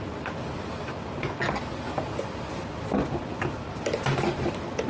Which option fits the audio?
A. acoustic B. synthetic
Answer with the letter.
A